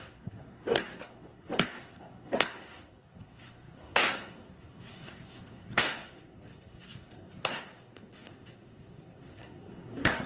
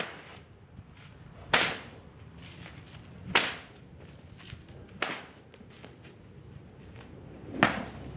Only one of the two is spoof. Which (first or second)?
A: first